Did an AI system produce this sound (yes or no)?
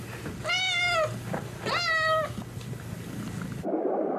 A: no